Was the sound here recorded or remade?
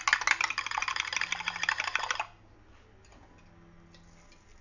recorded